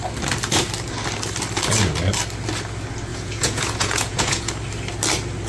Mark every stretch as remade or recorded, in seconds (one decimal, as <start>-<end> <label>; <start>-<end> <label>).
0.0-3.1 recorded; 3.1-4.5 remade; 4.5-5.5 recorded

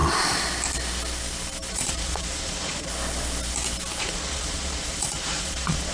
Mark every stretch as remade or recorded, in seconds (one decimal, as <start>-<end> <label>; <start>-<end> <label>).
0.0-1.7 recorded; 1.7-2.9 remade; 2.9-4.0 recorded; 4.0-5.9 remade

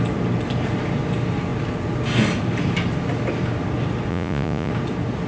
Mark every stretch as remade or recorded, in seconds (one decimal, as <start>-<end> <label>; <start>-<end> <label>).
0.0-4.1 recorded; 4.1-4.7 remade; 4.7-5.3 recorded

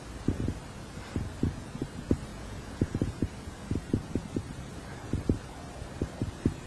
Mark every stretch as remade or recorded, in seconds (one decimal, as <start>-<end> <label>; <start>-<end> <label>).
0.0-2.3 recorded; 2.3-3.1 remade; 3.1-6.7 recorded

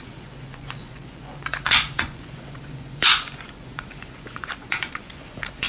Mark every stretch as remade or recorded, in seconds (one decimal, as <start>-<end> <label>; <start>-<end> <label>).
0.0-5.7 remade

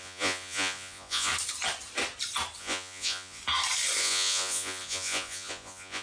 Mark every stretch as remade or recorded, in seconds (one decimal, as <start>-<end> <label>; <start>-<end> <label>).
0.0-1.3 remade; 1.3-2.6 recorded; 2.6-3.4 remade; 3.4-4.0 recorded; 4.0-6.0 remade